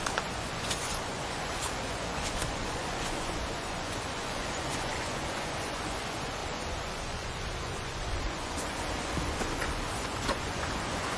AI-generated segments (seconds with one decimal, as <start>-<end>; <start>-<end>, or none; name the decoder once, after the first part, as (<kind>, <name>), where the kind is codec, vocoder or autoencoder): 0.0-11.2 (vocoder, Vocos)